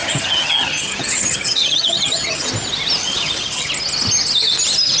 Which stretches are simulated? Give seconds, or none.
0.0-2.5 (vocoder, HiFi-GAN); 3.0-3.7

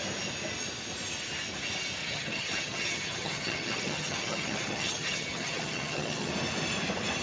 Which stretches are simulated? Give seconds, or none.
2.0-6.3 (vocoder, HiFi-GAN)

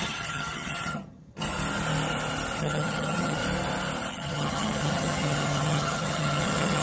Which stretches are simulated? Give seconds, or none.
0.0-1.4 (vocoder, HiFi-GAN); 2.6-3.4; 4.1-6.8

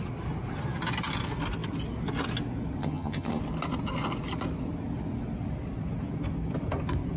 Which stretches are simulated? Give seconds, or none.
2.8-3.4 (vocoder, HiFi-GAN)